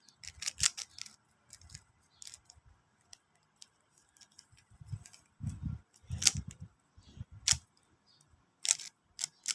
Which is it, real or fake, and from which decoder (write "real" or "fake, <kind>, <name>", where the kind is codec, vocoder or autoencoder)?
real